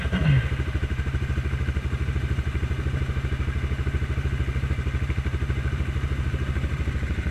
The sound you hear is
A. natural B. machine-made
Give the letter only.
A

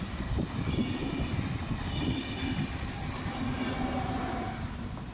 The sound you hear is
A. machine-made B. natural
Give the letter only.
B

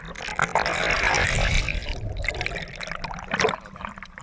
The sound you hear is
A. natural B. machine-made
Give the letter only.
A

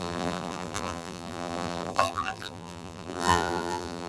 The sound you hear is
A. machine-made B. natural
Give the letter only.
A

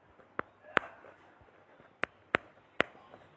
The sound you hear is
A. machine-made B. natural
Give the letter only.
B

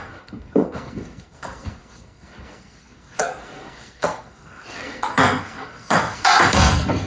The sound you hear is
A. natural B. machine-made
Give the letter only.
B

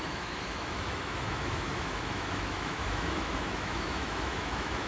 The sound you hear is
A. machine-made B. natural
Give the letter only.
A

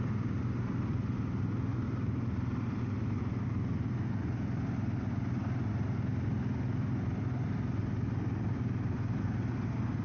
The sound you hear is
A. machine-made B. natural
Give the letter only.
B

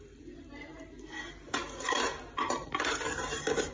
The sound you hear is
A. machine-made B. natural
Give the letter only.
B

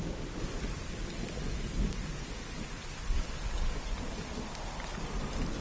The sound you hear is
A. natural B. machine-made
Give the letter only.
A